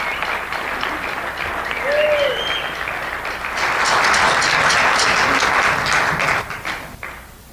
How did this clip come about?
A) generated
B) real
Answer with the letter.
B